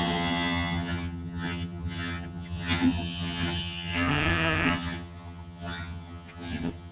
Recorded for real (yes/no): no